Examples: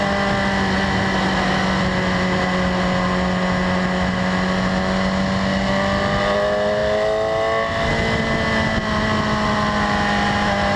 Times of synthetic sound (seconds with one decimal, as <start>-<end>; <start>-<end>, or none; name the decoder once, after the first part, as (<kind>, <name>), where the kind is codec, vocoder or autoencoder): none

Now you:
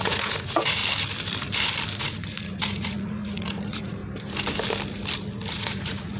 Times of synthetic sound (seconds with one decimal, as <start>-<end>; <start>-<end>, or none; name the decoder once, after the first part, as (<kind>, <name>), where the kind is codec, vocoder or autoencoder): 0.0-0.8 (vocoder, Vocos); 2.0-4.0; 5.5-6.2

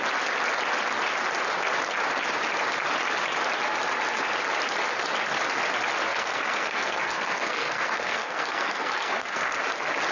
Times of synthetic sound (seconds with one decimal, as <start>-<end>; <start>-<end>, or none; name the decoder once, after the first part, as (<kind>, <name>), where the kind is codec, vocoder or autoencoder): 6.1-9.6 (codec, SNAC)

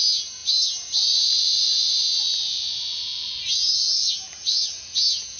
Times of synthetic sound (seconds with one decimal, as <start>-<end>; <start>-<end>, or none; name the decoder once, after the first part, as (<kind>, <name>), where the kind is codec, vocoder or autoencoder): 0.0-5.4 (vocoder, BigVGAN v2)

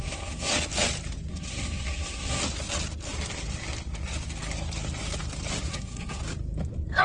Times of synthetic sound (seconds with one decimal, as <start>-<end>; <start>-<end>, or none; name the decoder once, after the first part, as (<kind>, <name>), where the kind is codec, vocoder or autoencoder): 0.0-0.5 (codec, SNAC); 1.3-2.4; 5.7-6.2

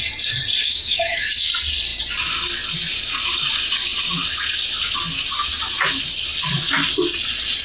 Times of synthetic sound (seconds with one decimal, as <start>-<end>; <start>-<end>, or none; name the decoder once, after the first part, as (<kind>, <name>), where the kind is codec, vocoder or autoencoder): 0.6-1.5 (autoencoder, DAC-VAE)